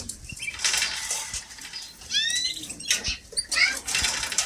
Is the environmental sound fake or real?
real